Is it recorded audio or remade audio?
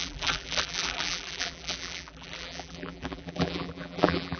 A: remade